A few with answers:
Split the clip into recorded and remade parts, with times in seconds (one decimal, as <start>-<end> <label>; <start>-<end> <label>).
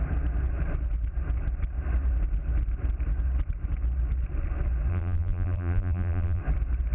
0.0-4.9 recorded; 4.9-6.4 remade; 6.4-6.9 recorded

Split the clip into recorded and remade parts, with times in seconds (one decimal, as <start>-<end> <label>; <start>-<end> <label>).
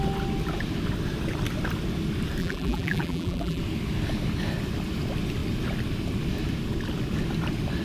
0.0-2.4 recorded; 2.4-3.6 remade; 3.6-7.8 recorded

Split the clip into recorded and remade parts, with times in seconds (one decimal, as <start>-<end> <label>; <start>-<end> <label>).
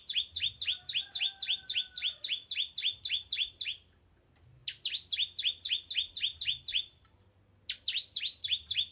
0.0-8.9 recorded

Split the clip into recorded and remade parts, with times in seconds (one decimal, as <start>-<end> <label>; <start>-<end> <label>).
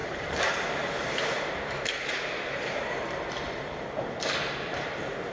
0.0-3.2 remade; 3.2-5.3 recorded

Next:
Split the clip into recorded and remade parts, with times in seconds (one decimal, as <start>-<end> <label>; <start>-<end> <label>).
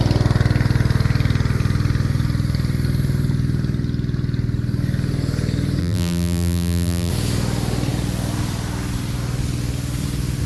0.0-5.8 recorded; 5.8-7.1 remade; 7.1-10.5 recorded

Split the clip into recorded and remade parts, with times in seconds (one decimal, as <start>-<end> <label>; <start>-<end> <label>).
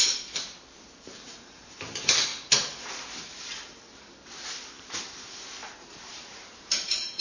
0.0-2.3 remade; 2.3-4.9 recorded; 4.9-7.2 remade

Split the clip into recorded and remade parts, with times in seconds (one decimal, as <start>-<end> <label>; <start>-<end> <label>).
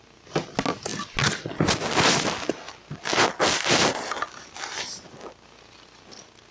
0.0-6.5 recorded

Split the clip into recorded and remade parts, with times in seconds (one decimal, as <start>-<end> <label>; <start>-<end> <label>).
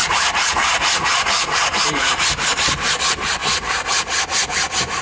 0.0-3.0 remade; 3.0-3.4 recorded; 3.4-3.9 remade; 3.9-5.0 recorded